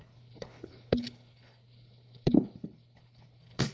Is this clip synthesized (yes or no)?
yes